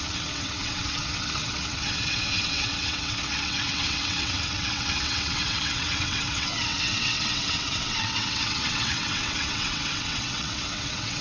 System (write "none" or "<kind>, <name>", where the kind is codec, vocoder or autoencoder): vocoder, WaveNeXt